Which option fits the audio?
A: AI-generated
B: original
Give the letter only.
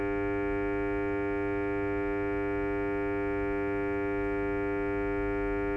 B